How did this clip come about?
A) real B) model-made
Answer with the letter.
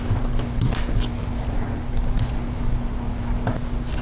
A